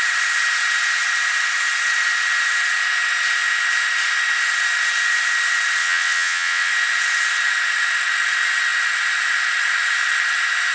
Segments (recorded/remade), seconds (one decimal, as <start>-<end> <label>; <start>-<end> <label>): 0.0-5.8 recorded; 5.8-6.7 remade; 6.7-10.7 recorded